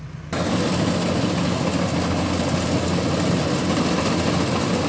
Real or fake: real